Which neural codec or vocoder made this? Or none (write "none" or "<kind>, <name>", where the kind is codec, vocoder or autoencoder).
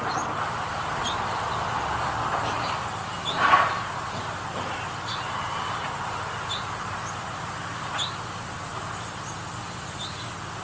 none